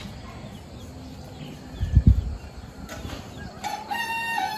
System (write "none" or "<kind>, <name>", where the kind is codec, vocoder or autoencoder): none